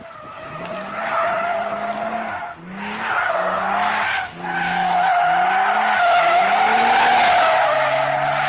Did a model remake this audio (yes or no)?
no